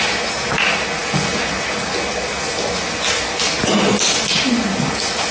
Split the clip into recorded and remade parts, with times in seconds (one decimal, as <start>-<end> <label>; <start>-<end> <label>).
0.0-5.3 recorded